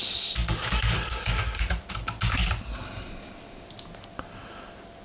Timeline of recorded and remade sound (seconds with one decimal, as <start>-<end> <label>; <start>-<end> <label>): 0.0-0.4 recorded; 0.4-1.6 remade; 1.6-5.0 recorded